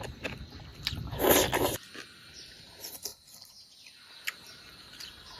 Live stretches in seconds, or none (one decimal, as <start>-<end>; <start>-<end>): 0.0-5.4